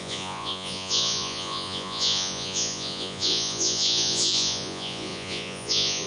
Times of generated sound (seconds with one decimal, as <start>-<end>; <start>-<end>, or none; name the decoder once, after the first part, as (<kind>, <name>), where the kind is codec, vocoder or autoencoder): 0.0-6.1 (vocoder, Vocos)